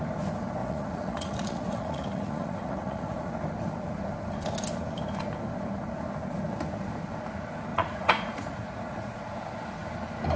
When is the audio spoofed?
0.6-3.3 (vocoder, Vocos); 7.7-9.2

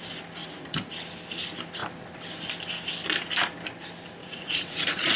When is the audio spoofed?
0.4-0.9 (vocoder, Vocos); 4.2-5.2